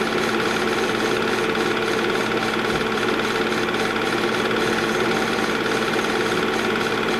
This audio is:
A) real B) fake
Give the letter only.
A